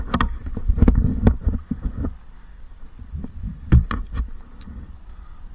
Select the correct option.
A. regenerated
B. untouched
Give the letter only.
B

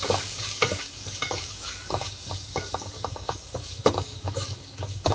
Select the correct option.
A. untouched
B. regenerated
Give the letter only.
B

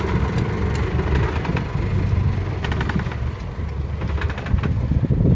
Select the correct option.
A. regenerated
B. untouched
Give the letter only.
B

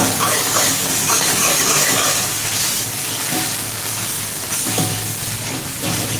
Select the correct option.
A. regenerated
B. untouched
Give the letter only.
A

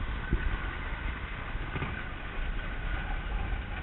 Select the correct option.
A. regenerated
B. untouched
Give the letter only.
B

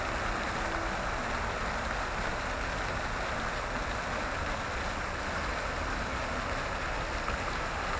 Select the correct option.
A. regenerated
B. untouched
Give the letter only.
B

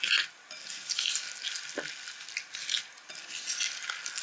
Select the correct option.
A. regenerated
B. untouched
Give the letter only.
B